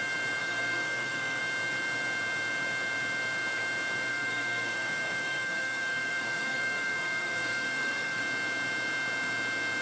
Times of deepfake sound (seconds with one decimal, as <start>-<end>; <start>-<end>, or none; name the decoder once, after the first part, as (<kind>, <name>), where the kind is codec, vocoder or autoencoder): 0.4-1.4 (codec, SNAC); 4.1-8.2